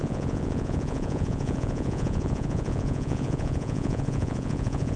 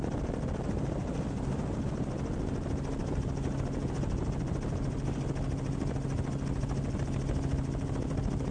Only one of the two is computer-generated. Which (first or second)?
first